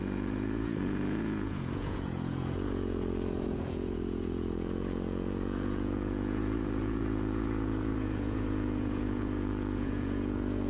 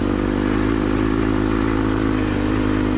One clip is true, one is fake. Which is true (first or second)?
second